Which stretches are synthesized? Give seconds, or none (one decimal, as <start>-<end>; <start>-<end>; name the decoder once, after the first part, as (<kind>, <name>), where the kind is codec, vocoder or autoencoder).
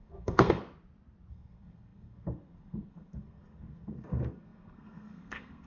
0.0-0.6 (codec, SNAC); 1.3-5.7